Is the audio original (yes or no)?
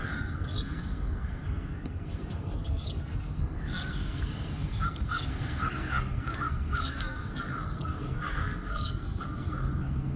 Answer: no